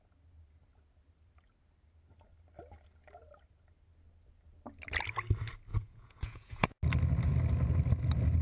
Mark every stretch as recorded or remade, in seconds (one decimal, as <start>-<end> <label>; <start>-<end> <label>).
0.0-5.7 recorded; 5.7-6.8 remade; 6.8-8.4 recorded